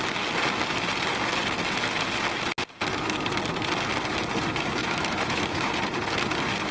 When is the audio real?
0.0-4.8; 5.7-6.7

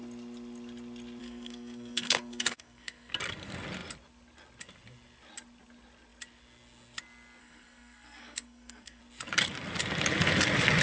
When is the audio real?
0.0-1.2; 3.1-7.4; 9.0-10.8